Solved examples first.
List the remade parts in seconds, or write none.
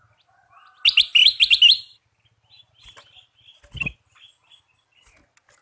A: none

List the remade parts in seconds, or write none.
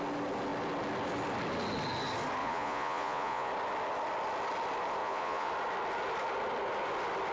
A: 2.4-3.5 (vocoder, Vocos); 5.0-5.5